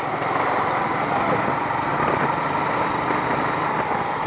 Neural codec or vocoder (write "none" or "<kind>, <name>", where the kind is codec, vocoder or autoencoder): none